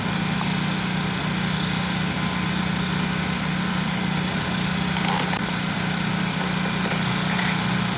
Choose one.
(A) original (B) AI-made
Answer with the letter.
A